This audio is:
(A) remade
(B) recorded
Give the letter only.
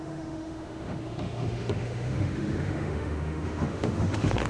A